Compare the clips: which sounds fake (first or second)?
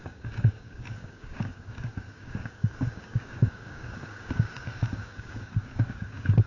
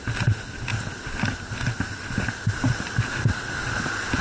first